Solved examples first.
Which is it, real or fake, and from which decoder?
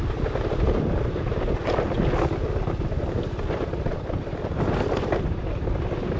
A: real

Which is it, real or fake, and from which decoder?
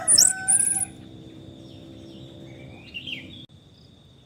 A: real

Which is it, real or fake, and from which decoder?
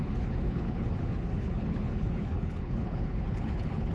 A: fake, codec, HILCodec